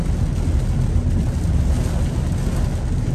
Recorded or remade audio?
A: recorded